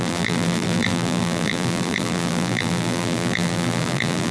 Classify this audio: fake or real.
fake